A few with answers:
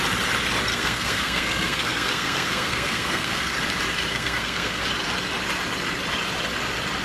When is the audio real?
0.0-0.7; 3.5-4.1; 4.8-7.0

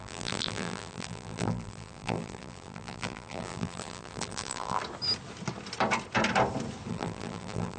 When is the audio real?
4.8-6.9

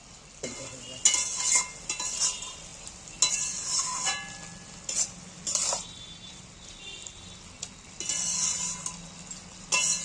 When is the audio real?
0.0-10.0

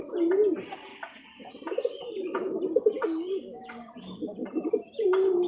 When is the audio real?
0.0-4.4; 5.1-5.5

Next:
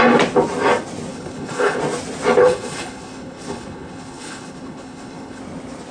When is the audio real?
0.0-1.1; 1.8-2.4; 5.4-5.9

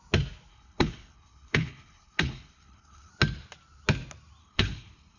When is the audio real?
0.0-0.5; 3.1-4.4

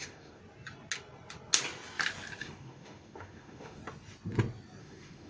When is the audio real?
0.4-2.4; 3.8-4.8